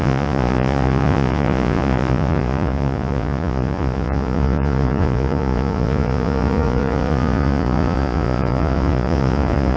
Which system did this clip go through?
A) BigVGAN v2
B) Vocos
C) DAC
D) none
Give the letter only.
B